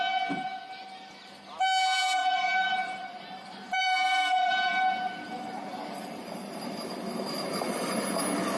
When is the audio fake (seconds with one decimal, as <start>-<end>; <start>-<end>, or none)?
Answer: 2.2-4.5; 5.7-6.6